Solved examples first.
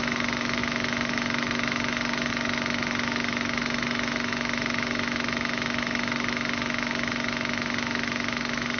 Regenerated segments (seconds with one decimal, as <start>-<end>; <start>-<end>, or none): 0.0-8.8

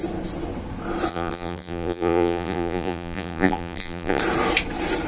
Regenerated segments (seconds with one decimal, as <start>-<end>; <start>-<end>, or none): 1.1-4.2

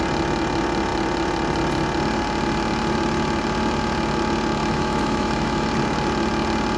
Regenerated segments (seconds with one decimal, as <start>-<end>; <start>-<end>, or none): 4.6-5.7

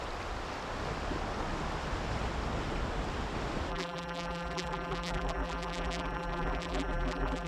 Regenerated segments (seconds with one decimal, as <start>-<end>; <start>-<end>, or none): 3.7-7.5

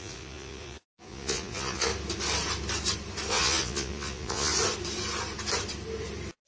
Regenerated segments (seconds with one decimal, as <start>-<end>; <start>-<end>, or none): 0.0-1.9; 3.3-4.5